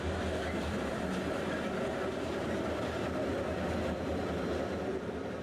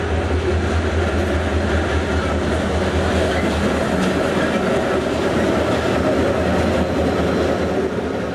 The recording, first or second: second